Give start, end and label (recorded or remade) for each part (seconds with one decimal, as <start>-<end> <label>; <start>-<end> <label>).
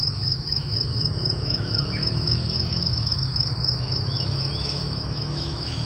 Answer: 0.0-5.9 remade